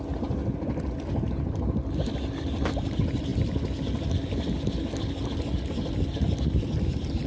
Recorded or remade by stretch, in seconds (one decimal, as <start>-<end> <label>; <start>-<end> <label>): 0.0-7.3 recorded